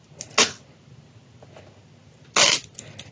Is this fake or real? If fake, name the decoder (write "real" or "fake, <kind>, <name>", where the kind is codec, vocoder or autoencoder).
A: real